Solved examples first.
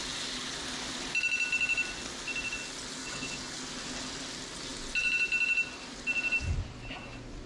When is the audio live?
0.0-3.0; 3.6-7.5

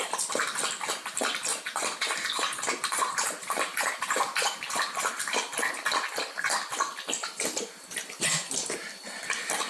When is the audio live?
0.0-1.5; 5.1-7.2; 9.0-9.7

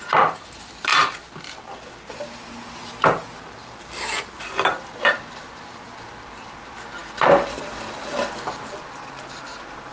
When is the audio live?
0.0-3.6; 5.9-9.9

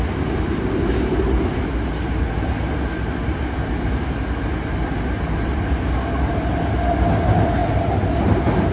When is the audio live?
0.0-8.7